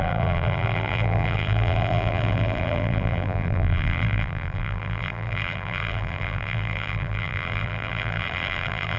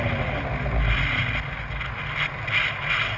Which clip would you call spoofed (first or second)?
first